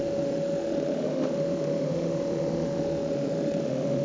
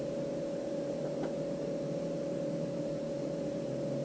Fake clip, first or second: first